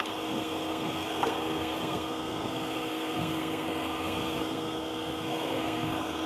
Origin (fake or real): fake